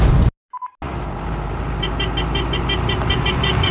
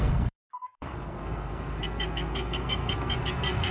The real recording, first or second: first